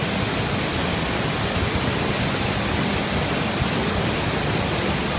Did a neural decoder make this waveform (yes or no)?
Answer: no